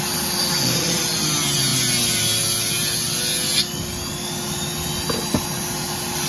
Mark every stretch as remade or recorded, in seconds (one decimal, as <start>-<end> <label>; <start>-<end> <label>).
0.0-6.3 recorded